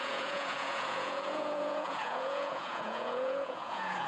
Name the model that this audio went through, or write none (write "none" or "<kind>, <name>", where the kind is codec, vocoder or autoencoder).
vocoder, Vocos